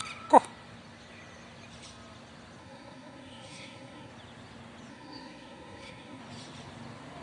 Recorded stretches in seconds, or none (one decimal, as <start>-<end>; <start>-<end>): 0.0-2.6; 4.1-4.9; 6.2-7.2